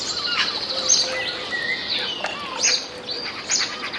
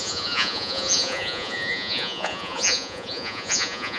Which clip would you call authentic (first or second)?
first